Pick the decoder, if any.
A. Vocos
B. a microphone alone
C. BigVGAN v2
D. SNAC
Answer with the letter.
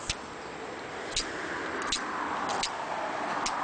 B